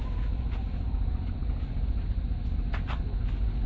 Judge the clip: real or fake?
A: real